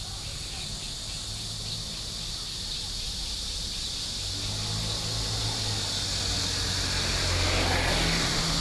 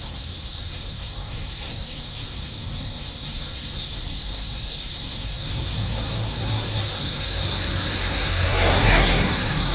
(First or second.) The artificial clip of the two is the second